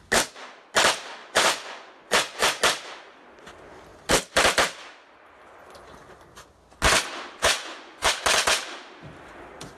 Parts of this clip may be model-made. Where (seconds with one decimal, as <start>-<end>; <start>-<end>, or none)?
1.2-2.6; 7.4-8.1